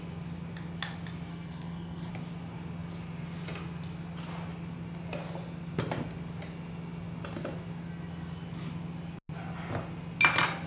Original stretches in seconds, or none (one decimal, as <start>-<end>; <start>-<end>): 0.0-1.3; 2.1-10.7